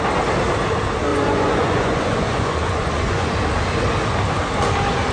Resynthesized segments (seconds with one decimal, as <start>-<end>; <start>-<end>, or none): 1.1-3.3